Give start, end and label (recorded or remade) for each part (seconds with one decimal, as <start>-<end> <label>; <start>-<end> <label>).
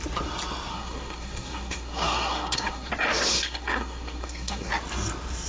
0.0-0.7 recorded; 0.7-2.9 remade; 2.9-3.3 recorded; 3.3-4.7 remade; 4.7-5.5 recorded